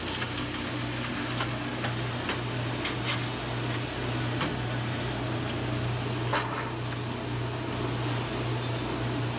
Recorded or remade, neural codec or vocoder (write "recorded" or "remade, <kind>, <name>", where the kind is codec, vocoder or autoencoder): recorded